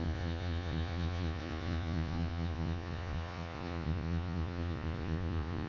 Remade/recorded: remade